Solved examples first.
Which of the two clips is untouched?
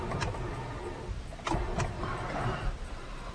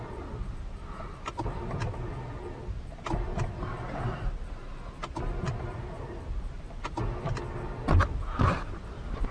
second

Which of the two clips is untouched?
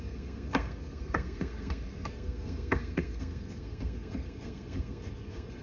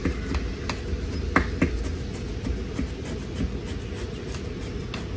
second